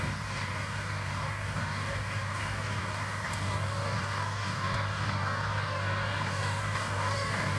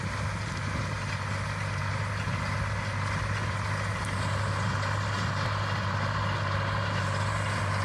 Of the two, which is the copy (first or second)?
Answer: first